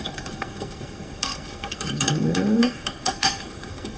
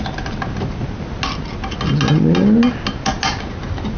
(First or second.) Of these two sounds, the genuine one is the second